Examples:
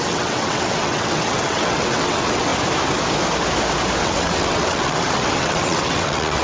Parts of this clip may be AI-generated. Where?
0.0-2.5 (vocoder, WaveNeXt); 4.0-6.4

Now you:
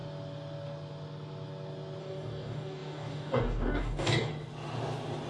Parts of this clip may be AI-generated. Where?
2.0-4.3 (codec, DAC)